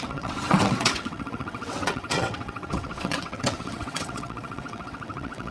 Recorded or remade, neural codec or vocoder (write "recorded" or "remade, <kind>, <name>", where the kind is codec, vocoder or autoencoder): remade, vocoder, WaveNeXt